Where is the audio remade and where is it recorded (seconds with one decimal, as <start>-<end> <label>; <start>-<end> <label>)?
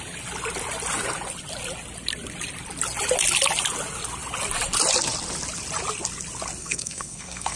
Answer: 0.0-6.6 recorded; 6.6-7.6 remade